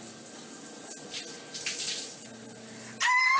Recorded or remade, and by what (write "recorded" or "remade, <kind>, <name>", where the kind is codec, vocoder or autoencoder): recorded